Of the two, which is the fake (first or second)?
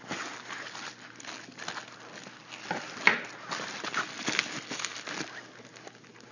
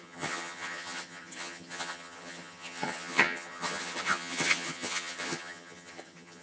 second